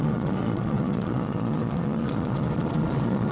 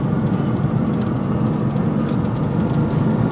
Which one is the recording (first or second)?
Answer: second